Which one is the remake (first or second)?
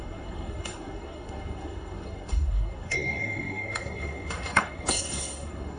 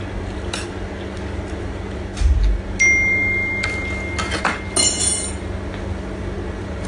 first